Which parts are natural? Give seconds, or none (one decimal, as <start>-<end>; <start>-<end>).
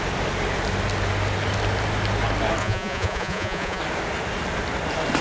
0.0-2.6; 3.8-5.2